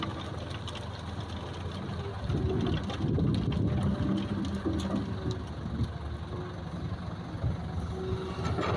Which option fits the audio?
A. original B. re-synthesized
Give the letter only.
A